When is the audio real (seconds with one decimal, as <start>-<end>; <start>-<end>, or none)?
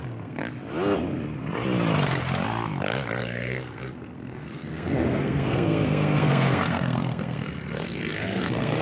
0.4-3.2